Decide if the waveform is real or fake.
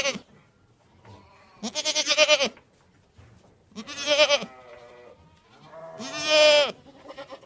real